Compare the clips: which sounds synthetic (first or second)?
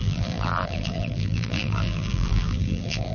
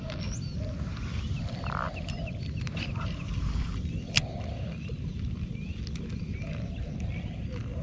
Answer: first